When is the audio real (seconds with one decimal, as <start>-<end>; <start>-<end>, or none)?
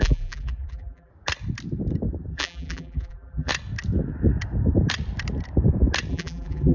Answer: 1.1-2.3; 3.5-6.1